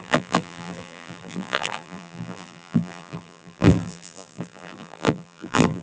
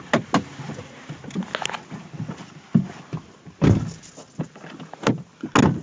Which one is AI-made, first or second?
first